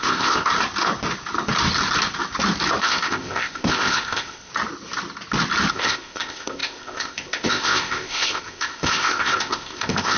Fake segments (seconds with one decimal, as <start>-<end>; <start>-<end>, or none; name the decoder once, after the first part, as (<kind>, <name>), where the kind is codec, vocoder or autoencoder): 0.0-0.5 (codec, ZipCodec); 2.8-4.5; 5.7-10.2